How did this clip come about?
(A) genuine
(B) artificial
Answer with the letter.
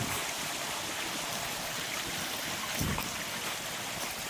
A